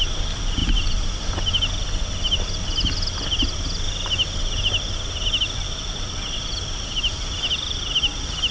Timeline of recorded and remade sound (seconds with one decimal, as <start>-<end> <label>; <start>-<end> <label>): 0.0-8.5 recorded